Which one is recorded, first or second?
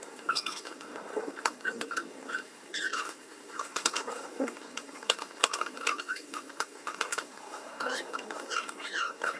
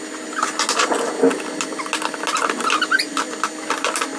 second